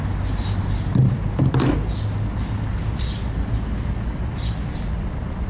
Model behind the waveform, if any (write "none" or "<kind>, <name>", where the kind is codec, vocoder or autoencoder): none